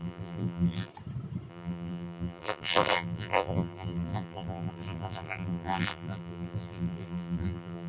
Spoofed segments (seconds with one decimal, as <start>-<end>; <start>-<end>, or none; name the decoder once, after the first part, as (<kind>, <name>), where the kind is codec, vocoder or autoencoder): 0.0-0.9 (vocoder, BigVGAN v2); 1.5-7.9